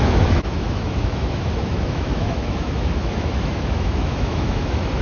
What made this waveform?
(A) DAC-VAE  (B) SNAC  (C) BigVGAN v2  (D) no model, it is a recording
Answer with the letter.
A